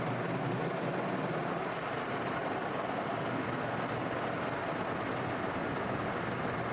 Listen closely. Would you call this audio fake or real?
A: real